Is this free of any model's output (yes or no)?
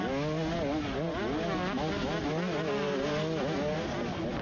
yes